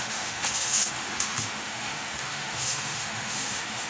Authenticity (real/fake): fake